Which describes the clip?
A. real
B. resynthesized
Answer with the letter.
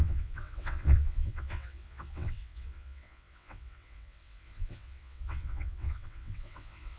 B